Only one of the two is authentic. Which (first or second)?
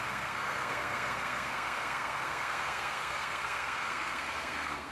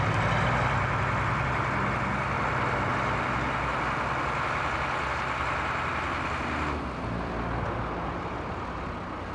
second